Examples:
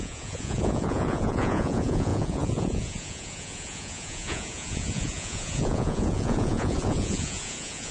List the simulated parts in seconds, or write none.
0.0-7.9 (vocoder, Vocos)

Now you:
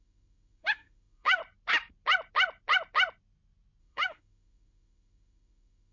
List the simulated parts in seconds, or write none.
0.0-1.4 (autoencoder, DAC-VAE); 3.8-5.9